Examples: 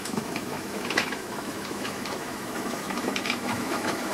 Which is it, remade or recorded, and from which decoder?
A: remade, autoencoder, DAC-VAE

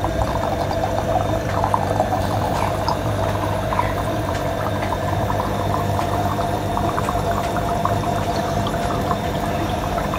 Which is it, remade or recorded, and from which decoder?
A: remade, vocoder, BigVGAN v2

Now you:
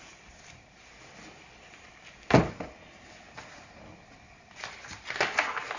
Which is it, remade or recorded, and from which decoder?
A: recorded